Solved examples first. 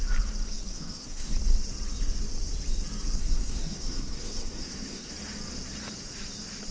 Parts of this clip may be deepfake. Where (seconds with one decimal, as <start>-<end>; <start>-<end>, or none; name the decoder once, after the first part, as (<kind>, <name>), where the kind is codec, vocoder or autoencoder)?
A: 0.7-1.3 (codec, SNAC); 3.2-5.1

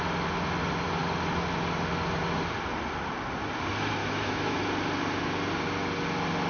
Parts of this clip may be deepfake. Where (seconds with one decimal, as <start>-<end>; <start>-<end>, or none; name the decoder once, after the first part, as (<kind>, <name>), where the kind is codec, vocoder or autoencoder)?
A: 4.0-4.6 (autoencoder, DAC-VAE)

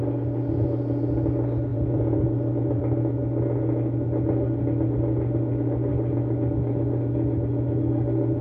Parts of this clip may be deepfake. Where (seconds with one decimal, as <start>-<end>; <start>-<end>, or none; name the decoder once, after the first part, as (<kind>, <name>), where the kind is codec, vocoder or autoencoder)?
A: 1.7-2.3 (vocoder, Vocos)

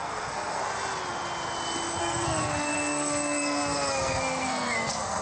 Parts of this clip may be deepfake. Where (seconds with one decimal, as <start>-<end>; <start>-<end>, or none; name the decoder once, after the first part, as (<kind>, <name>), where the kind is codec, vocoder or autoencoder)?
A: 0.0-0.6 (codec, SNAC); 2.0-5.2